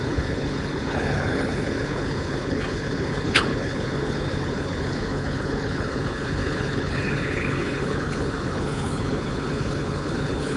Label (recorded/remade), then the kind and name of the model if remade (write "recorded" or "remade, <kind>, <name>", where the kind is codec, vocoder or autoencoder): remade, codec, HILCodec